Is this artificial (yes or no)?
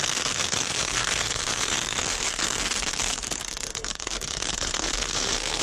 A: yes